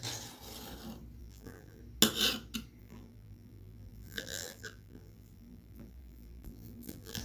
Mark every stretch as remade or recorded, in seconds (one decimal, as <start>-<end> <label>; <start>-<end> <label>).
0.0-1.2 recorded; 1.2-1.8 remade; 1.8-2.8 recorded; 2.8-7.2 remade